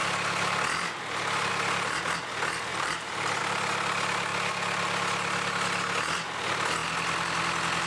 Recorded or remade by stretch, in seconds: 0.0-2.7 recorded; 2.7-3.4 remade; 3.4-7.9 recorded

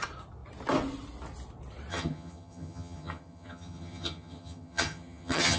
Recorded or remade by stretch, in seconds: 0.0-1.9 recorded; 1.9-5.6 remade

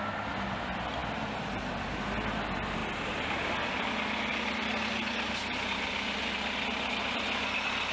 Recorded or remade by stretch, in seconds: 0.0-7.9 recorded